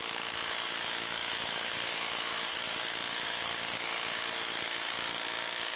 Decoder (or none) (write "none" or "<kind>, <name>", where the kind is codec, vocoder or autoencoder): autoencoder, DAC-VAE